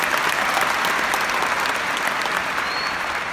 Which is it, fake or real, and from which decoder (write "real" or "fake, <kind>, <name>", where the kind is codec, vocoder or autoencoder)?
real